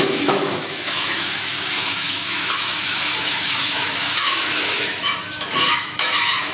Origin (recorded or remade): remade